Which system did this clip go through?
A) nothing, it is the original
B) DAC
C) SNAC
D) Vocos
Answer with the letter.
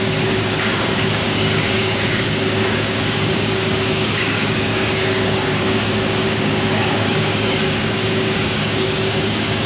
B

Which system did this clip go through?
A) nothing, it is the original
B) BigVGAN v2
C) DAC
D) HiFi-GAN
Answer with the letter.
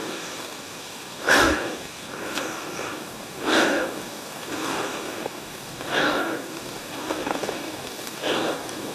C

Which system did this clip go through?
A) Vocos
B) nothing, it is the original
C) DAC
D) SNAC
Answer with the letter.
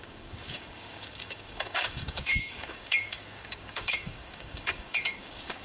C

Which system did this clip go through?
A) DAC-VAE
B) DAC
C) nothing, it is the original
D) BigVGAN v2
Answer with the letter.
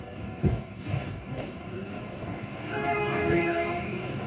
B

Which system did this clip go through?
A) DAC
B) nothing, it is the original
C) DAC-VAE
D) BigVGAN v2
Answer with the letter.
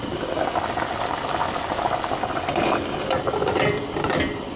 B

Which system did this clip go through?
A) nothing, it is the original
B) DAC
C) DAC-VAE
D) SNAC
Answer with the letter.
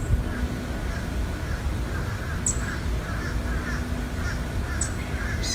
A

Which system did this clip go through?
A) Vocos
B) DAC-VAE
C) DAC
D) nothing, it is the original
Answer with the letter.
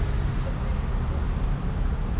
D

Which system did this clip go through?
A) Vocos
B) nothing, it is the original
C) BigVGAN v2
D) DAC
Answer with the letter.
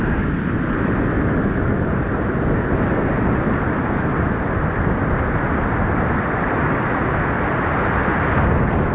B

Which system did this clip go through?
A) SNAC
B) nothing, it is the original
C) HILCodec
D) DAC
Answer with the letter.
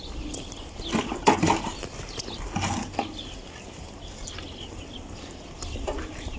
B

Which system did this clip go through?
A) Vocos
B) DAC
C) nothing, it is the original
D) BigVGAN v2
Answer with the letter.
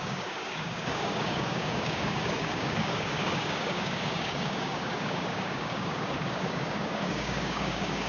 B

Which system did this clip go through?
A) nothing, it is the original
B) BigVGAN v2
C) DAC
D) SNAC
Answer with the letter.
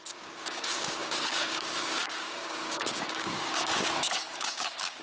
C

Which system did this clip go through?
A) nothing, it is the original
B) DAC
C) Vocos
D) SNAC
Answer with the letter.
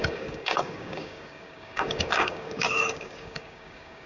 B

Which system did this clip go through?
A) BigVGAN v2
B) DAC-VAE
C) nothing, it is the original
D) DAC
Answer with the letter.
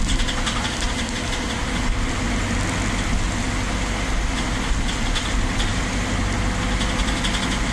C